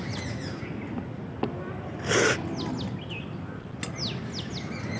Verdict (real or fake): real